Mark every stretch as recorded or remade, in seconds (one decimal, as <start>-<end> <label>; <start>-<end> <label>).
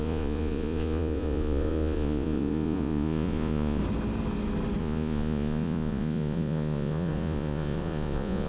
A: 0.0-3.8 remade; 3.8-4.8 recorded; 4.8-8.5 remade